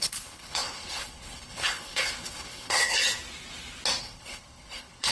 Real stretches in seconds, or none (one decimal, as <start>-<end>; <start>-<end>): 3.0-4.0